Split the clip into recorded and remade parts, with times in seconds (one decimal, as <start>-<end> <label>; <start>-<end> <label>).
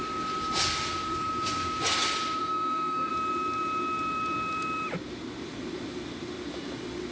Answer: 0.0-2.4 recorded; 2.4-3.1 remade; 3.1-7.1 recorded